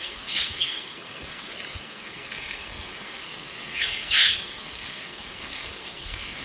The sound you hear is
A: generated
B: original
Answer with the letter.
A